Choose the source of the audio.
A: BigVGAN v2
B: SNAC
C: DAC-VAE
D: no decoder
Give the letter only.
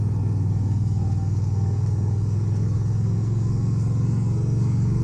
B